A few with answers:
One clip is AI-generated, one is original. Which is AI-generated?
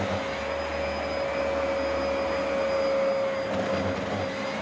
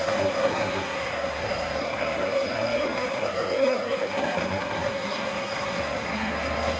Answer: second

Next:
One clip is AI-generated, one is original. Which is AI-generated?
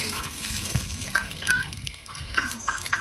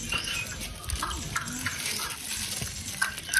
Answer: first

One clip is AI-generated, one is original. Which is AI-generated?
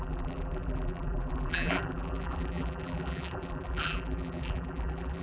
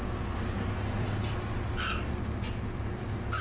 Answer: first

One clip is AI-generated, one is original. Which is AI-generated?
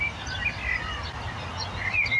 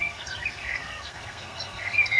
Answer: second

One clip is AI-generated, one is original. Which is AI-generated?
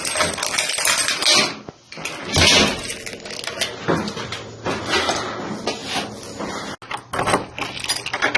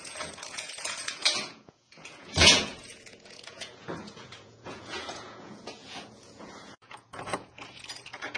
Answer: second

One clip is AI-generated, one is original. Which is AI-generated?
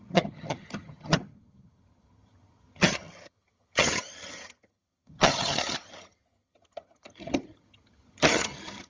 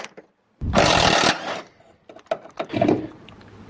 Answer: first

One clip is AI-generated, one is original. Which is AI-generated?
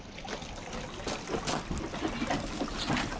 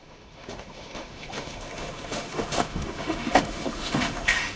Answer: second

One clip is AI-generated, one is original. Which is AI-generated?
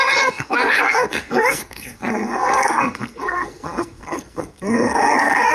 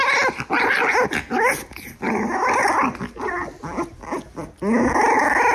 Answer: first